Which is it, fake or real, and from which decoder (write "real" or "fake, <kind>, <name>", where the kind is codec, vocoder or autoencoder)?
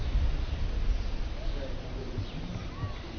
real